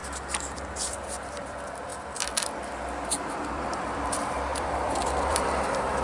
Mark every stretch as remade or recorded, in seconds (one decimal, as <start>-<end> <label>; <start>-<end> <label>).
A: 0.0-6.0 remade